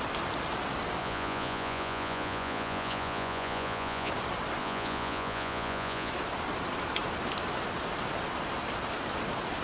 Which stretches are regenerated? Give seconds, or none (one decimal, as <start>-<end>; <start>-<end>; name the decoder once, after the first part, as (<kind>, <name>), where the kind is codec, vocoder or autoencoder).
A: 1.0-4.1 (vocoder, Vocos); 4.6-6.1